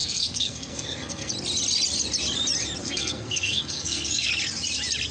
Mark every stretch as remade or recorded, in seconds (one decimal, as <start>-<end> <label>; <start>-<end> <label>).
0.0-1.3 remade; 1.3-2.8 recorded; 2.8-4.3 remade; 4.3-5.1 recorded